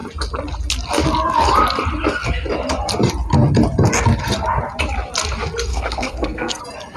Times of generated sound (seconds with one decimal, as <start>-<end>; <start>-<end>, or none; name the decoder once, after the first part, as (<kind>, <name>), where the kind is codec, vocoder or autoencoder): 5.7-6.6 (codec, SNAC)